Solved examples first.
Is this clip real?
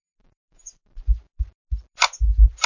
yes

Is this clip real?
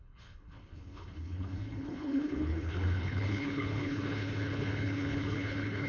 no